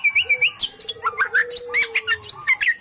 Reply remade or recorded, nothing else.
recorded